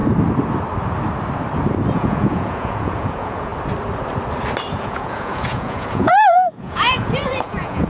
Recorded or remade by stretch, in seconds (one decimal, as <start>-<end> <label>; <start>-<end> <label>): 0.0-1.9 recorded; 1.9-3.5 remade; 3.5-4.7 recorded; 4.7-7.9 remade